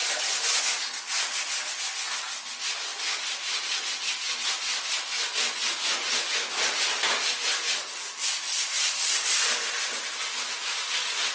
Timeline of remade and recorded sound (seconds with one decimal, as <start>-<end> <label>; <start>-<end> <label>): 0.0-0.6 remade; 0.6-2.9 recorded; 2.9-3.8 remade; 3.8-11.3 recorded